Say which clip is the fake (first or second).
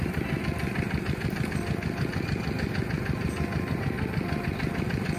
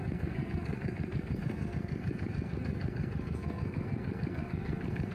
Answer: second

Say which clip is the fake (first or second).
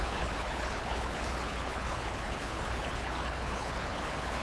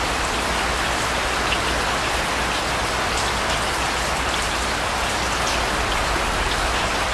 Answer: first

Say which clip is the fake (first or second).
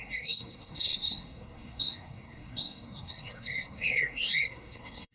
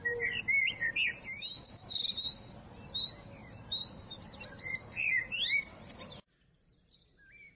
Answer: first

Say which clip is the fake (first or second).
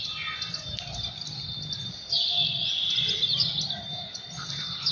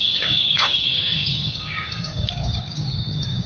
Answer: second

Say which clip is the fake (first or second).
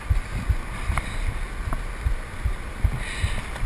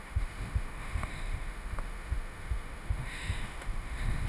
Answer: second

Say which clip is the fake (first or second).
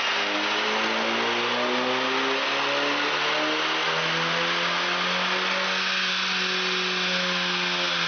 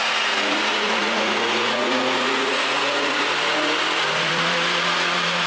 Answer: second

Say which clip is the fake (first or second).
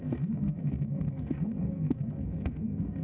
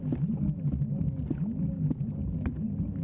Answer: first